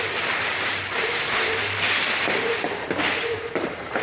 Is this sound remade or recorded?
remade